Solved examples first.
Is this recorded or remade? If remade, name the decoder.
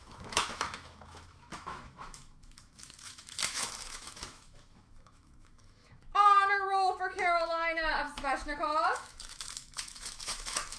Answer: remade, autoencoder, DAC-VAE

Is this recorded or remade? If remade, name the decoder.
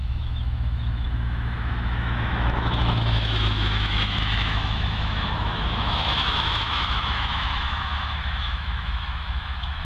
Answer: remade, autoencoder, DAC-VAE